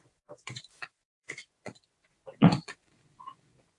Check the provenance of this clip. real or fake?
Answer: fake